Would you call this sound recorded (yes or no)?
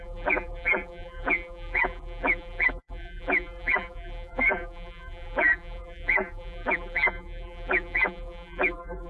no